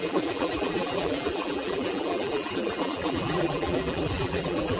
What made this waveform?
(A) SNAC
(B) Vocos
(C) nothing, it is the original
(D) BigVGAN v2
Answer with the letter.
D